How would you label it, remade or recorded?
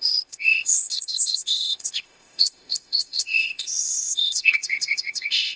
remade